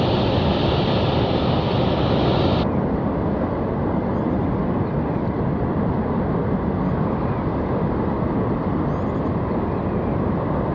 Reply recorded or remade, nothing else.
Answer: recorded